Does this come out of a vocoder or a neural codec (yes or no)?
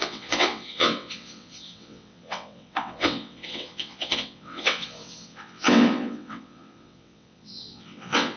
yes